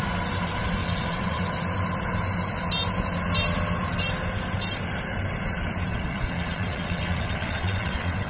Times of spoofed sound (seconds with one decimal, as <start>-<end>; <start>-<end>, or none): 0.8-1.4; 5.9-8.3